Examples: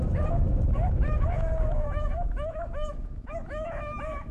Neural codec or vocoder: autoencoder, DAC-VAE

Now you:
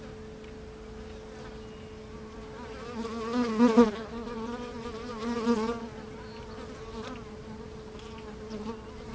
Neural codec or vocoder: none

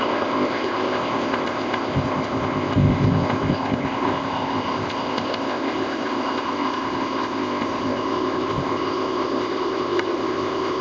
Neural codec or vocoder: codec, ZipCodec